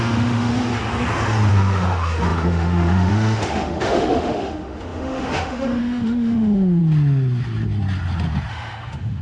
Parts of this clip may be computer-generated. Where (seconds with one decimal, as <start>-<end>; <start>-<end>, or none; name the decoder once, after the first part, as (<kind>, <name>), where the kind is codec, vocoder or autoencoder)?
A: 0.0-0.5 (autoencoder, DAC-VAE); 1.5-6.8; 8.5-9.2